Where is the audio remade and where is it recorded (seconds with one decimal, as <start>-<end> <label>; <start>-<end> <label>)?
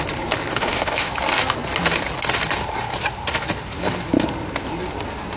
0.0-0.5 recorded; 0.5-1.1 remade; 1.1-5.4 recorded